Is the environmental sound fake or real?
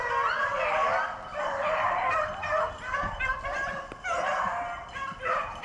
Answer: real